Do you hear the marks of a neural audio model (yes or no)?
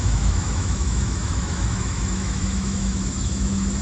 yes